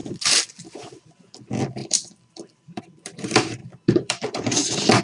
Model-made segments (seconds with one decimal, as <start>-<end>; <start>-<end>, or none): 0.7-5.0